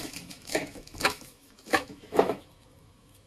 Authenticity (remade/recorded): remade